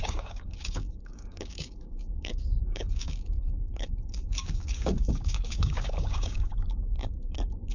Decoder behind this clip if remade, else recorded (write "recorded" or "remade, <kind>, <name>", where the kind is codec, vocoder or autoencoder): remade, codec, DAC